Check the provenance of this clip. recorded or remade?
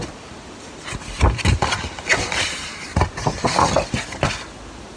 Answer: recorded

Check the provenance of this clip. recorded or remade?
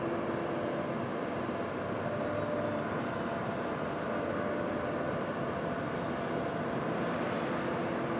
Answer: recorded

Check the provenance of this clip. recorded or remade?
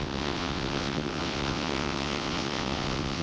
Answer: remade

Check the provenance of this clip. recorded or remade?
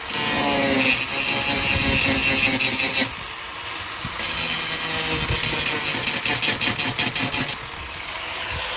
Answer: recorded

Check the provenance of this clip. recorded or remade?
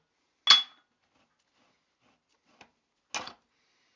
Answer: recorded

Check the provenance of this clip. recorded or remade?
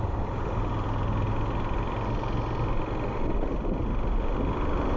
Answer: recorded